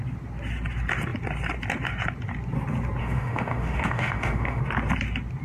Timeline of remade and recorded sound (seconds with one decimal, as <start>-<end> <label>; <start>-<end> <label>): 0.0-3.0 recorded; 3.0-4.6 remade; 4.6-5.4 recorded